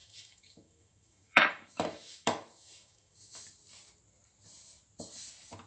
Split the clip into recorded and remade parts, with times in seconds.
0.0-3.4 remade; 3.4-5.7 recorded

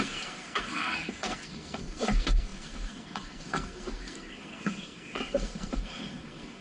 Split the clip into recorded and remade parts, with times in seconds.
0.0-6.6 remade

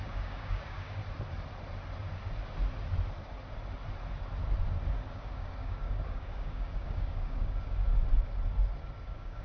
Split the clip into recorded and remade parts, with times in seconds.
0.0-1.0 remade; 1.0-5.1 recorded; 5.1-7.9 remade; 7.9-9.0 recorded; 9.0-9.4 remade

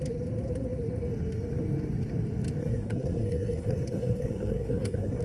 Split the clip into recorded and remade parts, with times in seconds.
0.0-2.6 recorded; 2.6-5.2 remade

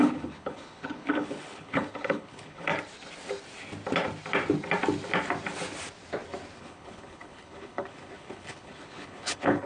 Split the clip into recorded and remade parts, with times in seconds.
0.0-2.7 remade; 2.7-6.6 recorded; 6.6-9.7 remade

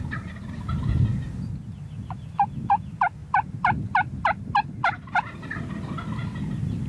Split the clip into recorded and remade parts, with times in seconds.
0.0-3.2 recorded; 3.2-5.5 remade; 5.5-6.9 recorded

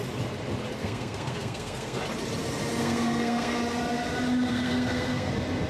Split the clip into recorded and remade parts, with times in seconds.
0.0-0.8 recorded; 0.8-2.0 remade; 2.0-2.8 recorded; 2.8-3.6 remade; 3.6-4.5 recorded; 4.5-5.3 remade; 5.3-5.7 recorded

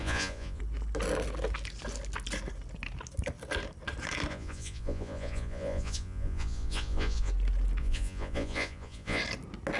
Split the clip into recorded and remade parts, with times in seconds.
0.0-0.6 remade; 0.6-4.3 recorded; 4.3-7.3 remade; 7.3-7.8 recorded; 7.8-9.2 remade; 9.2-9.8 recorded